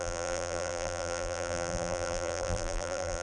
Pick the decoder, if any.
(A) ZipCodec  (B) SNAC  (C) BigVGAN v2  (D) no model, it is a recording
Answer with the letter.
C